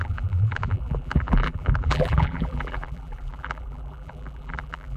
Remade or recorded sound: remade